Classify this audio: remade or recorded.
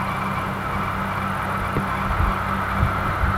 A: recorded